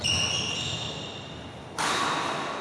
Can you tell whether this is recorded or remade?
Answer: recorded